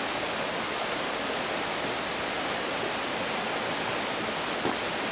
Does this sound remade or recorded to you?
recorded